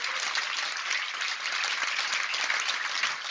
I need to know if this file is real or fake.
real